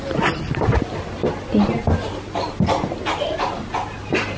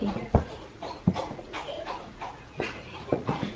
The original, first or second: first